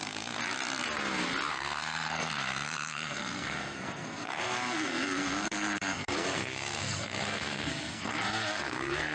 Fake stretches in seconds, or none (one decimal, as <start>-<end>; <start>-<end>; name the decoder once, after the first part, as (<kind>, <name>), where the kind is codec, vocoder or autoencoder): 0.0-0.4 (codec, SNAC); 1.5-9.1